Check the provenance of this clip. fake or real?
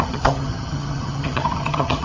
fake